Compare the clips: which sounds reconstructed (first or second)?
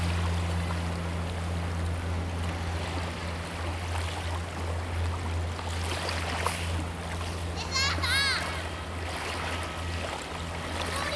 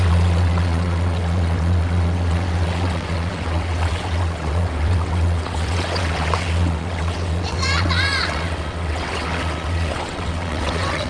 second